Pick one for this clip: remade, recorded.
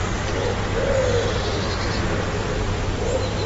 recorded